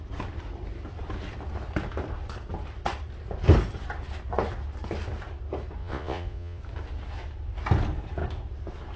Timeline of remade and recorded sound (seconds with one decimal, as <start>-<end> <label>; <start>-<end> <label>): 0.0-5.8 recorded; 5.8-6.6 remade; 6.6-9.0 recorded